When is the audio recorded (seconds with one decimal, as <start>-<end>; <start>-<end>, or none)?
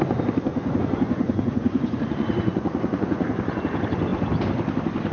0.0-0.5; 3.6-5.1